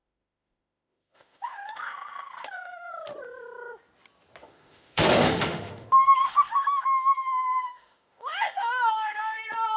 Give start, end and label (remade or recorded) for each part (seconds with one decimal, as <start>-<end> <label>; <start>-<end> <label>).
0.0-2.9 remade; 2.9-4.4 recorded; 4.4-9.4 remade; 9.4-9.8 recorded